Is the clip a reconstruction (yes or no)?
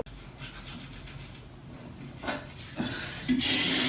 no